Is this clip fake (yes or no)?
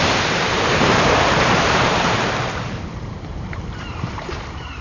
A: yes